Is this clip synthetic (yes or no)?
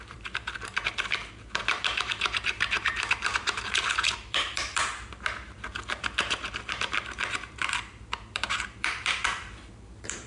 yes